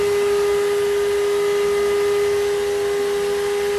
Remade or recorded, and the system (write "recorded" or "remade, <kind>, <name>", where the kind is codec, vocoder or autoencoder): recorded